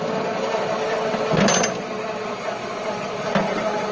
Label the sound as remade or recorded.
recorded